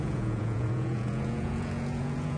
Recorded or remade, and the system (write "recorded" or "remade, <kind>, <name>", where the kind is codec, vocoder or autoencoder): remade, vocoder, Vocos